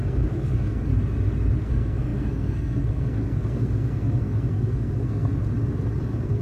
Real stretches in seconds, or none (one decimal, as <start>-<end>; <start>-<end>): 0.9-1.6; 5.4-6.0